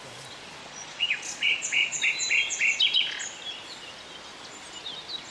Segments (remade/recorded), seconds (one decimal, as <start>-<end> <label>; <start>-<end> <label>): 0.0-0.6 recorded; 0.6-2.1 remade; 2.1-5.3 recorded